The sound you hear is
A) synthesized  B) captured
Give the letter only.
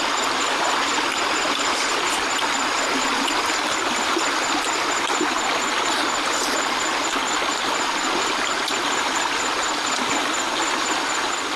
B